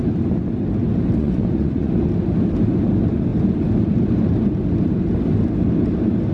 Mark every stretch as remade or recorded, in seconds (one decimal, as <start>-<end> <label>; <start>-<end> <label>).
0.0-1.2 recorded; 1.2-1.9 remade; 1.9-6.3 recorded